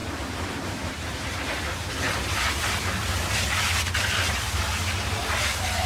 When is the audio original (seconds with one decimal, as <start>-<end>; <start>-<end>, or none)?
1.5-5.9